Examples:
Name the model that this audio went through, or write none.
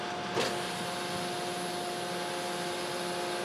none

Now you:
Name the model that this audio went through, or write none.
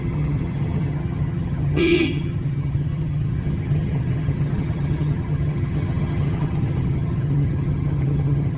vocoder, HiFi-GAN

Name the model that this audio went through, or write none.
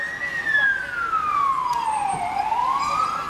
none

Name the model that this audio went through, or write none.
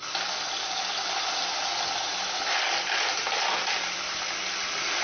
none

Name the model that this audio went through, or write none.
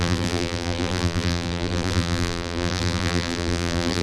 vocoder, BigVGAN v2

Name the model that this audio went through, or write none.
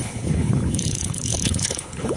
codec, HILCodec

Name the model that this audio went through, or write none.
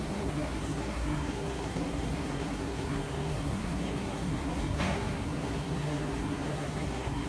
codec, SNAC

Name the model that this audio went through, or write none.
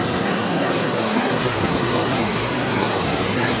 codec, SNAC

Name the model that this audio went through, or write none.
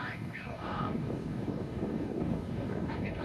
codec, DAC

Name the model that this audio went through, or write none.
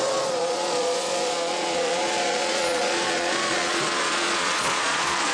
vocoder, Vocos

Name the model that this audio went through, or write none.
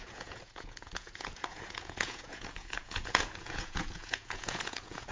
vocoder, Vocos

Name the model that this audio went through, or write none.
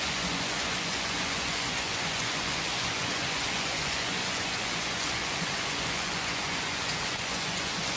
vocoder, Vocos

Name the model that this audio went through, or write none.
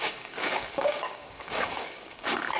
codec, DAC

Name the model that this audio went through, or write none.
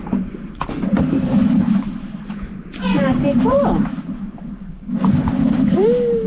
vocoder, BigVGAN v2